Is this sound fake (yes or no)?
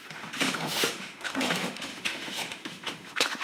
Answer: yes